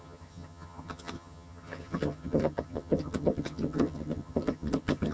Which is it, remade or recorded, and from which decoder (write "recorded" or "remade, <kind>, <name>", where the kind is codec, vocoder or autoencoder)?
remade, vocoder, HiFi-GAN